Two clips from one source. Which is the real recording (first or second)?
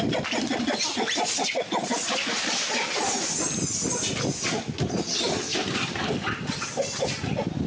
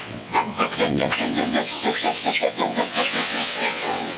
first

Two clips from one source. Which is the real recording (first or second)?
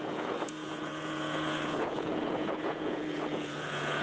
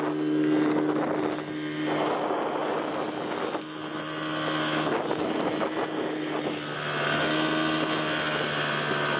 second